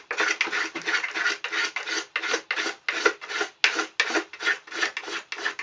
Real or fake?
real